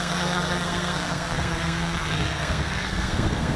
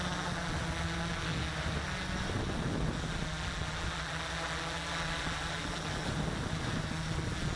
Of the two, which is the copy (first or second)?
first